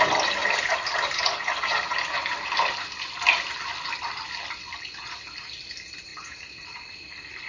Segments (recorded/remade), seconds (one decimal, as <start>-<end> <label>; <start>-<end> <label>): 0.0-0.4 recorded; 0.4-2.5 remade; 2.5-6.1 recorded; 6.1-6.9 remade; 6.9-7.5 recorded